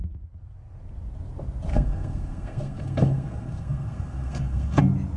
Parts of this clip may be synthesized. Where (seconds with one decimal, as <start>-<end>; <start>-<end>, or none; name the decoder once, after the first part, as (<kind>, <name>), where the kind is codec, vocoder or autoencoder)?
1.7-4.8 (codec, SNAC)